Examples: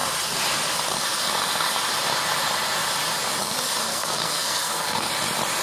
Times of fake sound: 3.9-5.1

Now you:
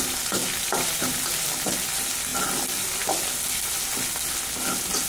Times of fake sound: none

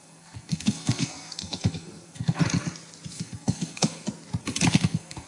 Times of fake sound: 0.0-2.4; 3.1-4.0; 4.7-5.3

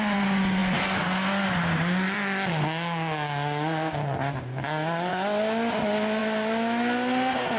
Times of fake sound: none

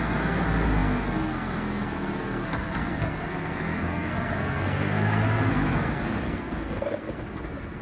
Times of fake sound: 0.0-7.8

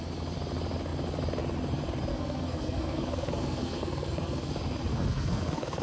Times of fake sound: 2.1-4.5; 4.9-5.8

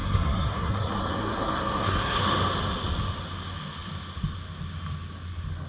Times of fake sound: 0.0-2.2